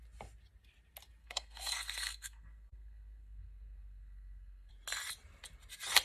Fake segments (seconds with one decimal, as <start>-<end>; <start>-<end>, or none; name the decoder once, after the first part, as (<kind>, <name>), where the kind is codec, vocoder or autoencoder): 1.2-4.7 (codec, SNAC)